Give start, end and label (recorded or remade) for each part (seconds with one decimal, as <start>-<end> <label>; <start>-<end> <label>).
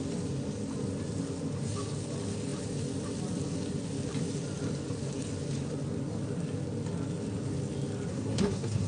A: 0.0-8.1 recorded; 8.1-8.9 remade